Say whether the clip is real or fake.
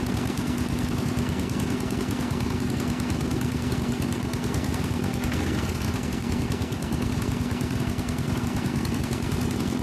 fake